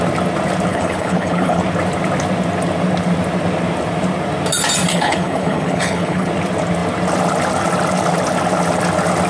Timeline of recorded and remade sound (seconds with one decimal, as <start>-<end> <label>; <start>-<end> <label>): 0.0-0.7 recorded; 0.7-1.6 remade; 1.6-4.9 recorded; 4.9-6.3 remade; 6.3-9.3 recorded

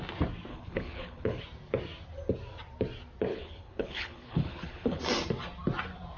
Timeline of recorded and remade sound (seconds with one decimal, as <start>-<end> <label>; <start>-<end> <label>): 0.0-0.5 recorded; 0.5-1.4 remade; 1.4-3.3 recorded; 3.3-5.0 remade; 5.0-6.2 recorded

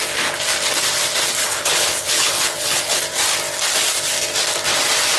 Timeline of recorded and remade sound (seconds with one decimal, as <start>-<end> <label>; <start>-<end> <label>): 0.0-1.4 recorded; 1.4-3.0 remade; 3.0-5.2 recorded

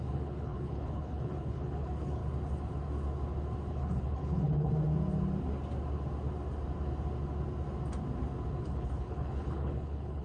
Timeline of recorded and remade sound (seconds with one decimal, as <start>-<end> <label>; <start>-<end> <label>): 0.0-2.2 remade; 2.2-3.7 recorded; 3.7-4.7 remade; 4.7-8.6 recorded; 8.6-10.2 remade

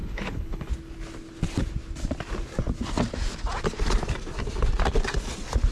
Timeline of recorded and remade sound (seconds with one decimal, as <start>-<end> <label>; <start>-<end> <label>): 0.0-0.7 remade; 0.7-5.7 recorded

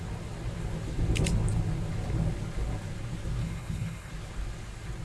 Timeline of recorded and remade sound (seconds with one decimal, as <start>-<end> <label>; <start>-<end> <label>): 0.0-3.4 recorded; 3.4-4.1 remade; 4.1-5.0 recorded

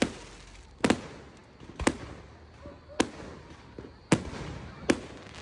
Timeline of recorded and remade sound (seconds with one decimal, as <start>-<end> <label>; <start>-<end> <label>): 0.0-5.4 recorded